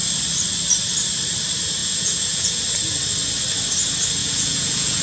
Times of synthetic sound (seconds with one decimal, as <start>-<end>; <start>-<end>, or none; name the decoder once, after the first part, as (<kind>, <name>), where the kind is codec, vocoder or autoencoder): 1.8-2.6 (vocoder, Vocos); 4.2-5.0

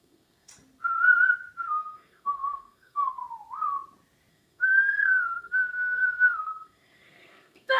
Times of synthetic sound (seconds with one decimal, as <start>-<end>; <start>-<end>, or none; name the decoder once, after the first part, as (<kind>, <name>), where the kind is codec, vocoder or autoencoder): 0.0-0.5 (codec, SNAC); 1.7-3.2; 4.3-7.8

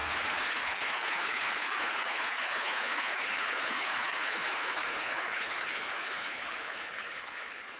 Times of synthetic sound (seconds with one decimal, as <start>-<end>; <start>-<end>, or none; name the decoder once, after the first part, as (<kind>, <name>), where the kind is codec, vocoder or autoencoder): 0.0-7.8 (codec, HILCodec)

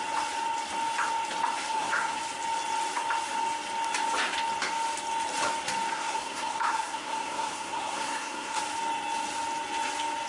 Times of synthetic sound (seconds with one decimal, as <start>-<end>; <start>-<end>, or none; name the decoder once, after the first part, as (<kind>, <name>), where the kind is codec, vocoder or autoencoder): 1.6-2.2 (codec, SNAC); 5.9-8.6

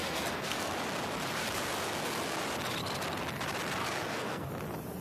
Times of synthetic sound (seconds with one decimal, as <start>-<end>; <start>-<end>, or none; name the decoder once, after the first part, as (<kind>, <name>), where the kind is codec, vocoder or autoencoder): 0.0-0.7 (codec, SNAC); 3.8-4.5

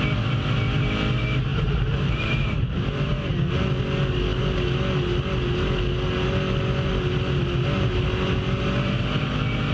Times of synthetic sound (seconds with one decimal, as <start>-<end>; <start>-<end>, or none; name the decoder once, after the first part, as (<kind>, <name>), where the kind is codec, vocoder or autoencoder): 1.5-3.5 (vocoder, BigVGAN v2)

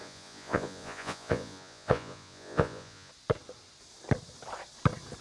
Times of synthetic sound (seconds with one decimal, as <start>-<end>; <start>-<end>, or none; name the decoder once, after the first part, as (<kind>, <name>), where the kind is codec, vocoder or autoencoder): 0.0-3.1 (vocoder, Vocos)